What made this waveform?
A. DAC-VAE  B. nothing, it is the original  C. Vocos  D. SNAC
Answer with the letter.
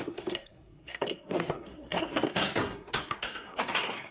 D